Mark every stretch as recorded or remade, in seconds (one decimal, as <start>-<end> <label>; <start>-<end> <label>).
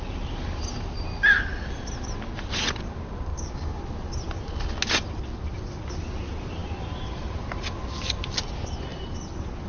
0.0-3.3 recorded; 3.3-3.8 remade; 3.8-9.7 recorded